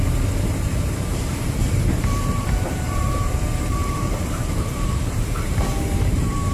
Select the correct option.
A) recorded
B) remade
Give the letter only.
B